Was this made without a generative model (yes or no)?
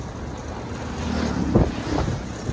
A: yes